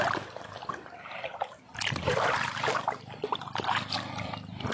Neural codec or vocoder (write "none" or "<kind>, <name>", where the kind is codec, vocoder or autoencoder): none